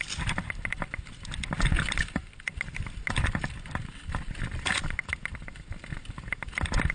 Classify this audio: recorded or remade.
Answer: recorded